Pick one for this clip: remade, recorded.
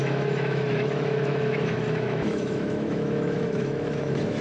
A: remade